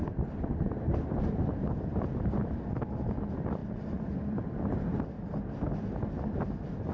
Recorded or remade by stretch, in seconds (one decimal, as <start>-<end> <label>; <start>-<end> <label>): 0.0-0.6 recorded; 0.6-2.4 remade; 2.4-6.9 recorded